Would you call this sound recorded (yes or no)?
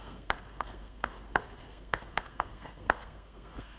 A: no